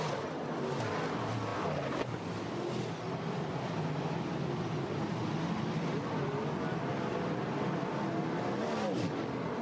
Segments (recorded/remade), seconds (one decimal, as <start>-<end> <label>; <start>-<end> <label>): 0.0-9.6 recorded

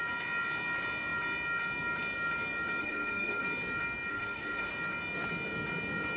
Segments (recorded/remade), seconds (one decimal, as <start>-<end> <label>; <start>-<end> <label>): 0.0-2.8 recorded; 2.8-3.4 remade; 3.4-4.1 recorded; 4.1-4.7 remade; 4.7-6.2 recorded

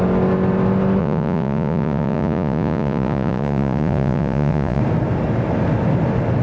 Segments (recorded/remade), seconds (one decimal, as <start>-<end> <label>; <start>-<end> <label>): 0.0-1.0 recorded; 1.0-4.8 remade; 4.8-6.4 recorded

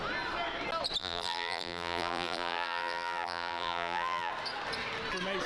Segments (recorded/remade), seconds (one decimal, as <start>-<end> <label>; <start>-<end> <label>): 0.0-1.0 recorded; 1.0-4.3 remade; 4.3-5.5 recorded